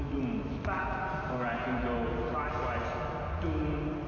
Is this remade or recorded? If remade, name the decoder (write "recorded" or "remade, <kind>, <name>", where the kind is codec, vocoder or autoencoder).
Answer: recorded